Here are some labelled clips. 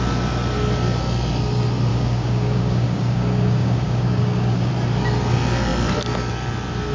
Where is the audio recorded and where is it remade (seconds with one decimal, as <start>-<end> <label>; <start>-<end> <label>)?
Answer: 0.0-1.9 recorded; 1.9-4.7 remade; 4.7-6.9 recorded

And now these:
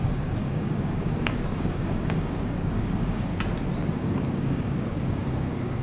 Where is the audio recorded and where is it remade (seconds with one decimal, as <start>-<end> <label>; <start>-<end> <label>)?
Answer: 0.0-3.3 remade; 3.3-3.9 recorded; 3.9-5.8 remade

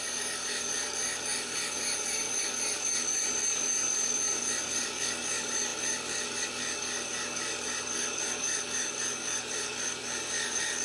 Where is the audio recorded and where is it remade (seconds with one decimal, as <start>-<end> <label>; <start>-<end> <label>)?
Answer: 0.0-10.8 remade

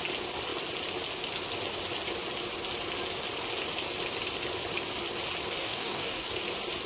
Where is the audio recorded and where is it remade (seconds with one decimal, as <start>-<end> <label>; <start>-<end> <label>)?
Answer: 0.0-5.6 recorded; 5.6-6.3 remade; 6.3-6.9 recorded

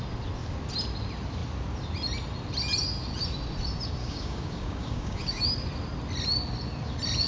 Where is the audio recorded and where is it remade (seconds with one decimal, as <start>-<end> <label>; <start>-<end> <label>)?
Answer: 0.0-4.0 recorded; 4.0-5.4 remade; 5.4-7.3 recorded